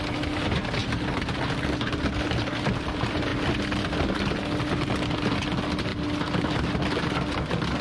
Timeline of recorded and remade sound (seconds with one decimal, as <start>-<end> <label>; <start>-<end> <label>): 0.0-7.8 recorded